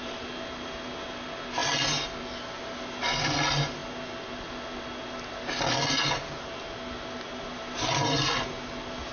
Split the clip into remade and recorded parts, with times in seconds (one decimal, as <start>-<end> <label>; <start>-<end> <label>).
0.0-9.1 recorded